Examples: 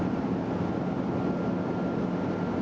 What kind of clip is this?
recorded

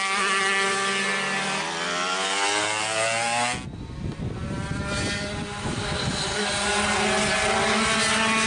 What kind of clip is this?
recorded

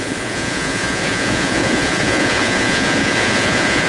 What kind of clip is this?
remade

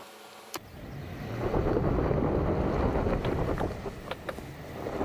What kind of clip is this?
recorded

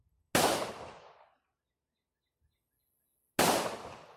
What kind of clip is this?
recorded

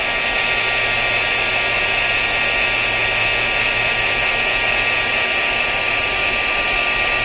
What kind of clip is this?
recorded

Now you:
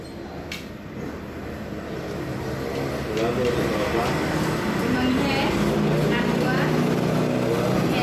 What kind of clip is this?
recorded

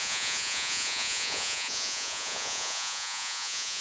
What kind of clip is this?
remade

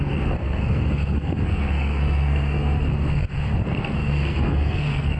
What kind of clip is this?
remade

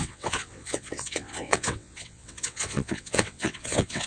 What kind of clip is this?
remade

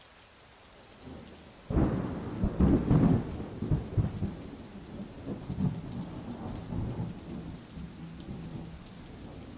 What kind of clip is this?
recorded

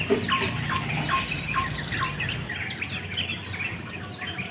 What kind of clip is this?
recorded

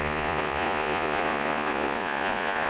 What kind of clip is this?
remade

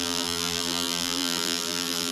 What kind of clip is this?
remade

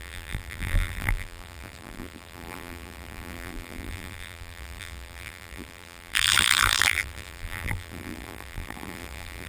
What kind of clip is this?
remade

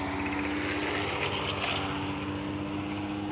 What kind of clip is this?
recorded